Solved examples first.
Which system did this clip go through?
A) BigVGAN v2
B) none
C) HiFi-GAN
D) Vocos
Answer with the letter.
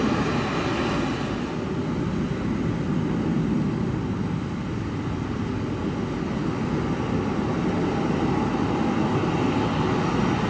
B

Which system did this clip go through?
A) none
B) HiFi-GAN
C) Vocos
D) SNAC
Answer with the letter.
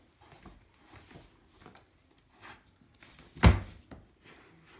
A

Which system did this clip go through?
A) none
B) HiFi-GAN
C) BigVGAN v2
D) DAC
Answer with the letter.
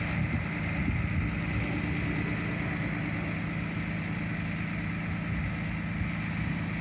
A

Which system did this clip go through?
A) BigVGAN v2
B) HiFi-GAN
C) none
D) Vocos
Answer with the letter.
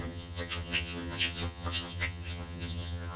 B